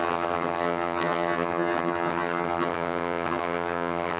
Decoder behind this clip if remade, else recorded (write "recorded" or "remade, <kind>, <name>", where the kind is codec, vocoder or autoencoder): remade, vocoder, HiFi-GAN